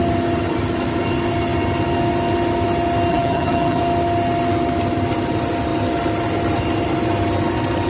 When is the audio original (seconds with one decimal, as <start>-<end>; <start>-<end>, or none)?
0.0-3.1; 3.8-7.9